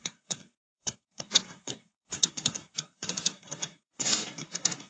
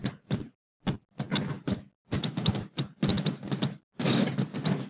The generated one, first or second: first